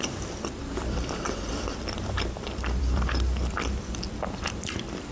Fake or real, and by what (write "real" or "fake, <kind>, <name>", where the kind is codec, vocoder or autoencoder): fake, vocoder, BigVGAN v2